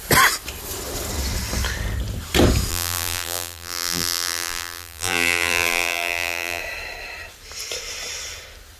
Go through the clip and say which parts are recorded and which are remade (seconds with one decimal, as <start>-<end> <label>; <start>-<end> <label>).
0.0-2.7 recorded; 2.7-6.6 remade; 6.6-8.8 recorded

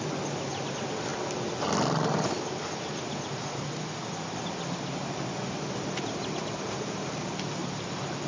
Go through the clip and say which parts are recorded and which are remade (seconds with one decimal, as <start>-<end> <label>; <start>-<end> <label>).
0.0-8.3 recorded